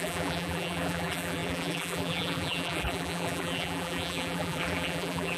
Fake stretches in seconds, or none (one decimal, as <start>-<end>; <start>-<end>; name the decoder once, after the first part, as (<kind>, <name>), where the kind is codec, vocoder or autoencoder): 0.0-5.4 (vocoder, BigVGAN v2)